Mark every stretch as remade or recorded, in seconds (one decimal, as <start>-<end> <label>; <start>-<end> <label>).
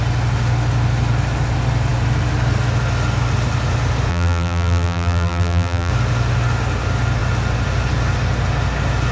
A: 0.0-4.1 recorded; 4.1-5.9 remade; 5.9-9.1 recorded